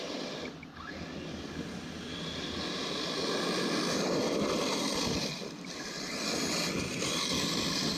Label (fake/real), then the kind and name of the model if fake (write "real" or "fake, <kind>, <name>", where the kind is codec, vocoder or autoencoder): real